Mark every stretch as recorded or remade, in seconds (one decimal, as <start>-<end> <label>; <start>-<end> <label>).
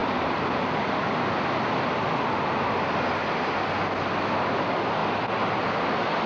0.0-6.3 recorded